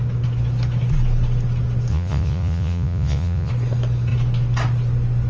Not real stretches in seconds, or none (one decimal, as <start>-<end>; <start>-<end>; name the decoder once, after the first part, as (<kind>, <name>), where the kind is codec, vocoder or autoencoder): 1.9-3.5 (vocoder, Vocos)